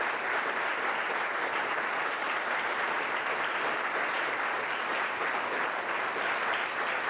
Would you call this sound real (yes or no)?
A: no